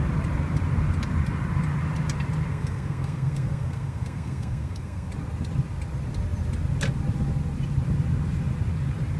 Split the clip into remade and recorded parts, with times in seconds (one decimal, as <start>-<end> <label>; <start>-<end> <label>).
0.0-2.5 recorded; 2.5-5.1 remade; 5.1-9.2 recorded